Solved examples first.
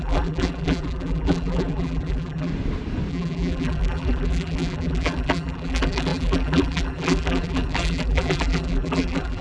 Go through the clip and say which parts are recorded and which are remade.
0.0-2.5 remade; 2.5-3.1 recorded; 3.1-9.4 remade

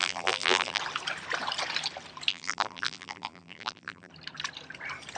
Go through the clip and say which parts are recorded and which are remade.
0.0-0.8 remade; 0.8-2.3 recorded; 2.3-4.1 remade; 4.1-5.2 recorded

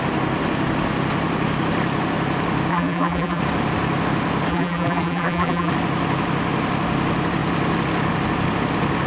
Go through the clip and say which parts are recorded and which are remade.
0.0-2.7 recorded; 2.7-3.4 remade; 3.4-4.5 recorded; 4.5-5.7 remade; 5.7-9.1 recorded